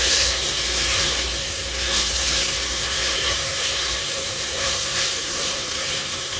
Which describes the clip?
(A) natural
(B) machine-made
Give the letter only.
B